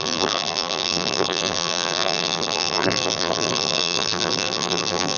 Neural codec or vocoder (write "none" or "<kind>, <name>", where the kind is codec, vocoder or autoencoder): vocoder, BigVGAN v2